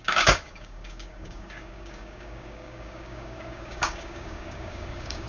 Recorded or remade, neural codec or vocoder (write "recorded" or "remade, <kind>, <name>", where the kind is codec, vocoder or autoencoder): remade, codec, DAC